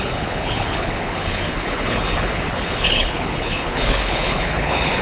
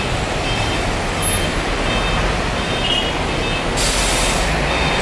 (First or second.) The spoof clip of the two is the first